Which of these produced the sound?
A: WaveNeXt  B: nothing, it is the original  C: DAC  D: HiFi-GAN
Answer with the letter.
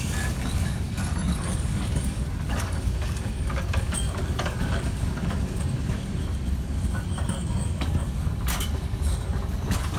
C